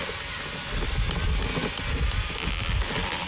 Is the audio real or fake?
real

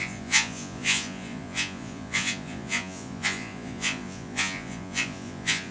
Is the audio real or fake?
fake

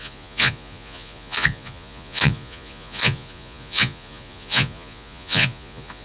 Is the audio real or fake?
fake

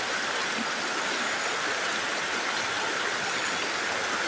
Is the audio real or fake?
real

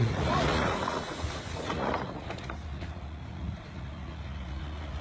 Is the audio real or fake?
fake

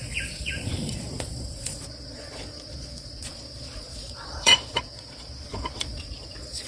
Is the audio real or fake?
fake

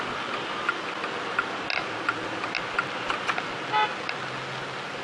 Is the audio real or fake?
real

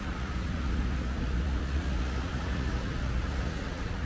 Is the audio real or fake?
fake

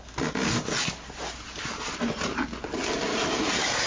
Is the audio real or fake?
real